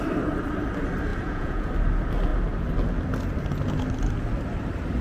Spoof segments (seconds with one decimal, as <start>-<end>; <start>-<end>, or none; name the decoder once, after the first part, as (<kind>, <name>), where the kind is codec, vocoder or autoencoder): 1.1-1.7 (vocoder, Vocos)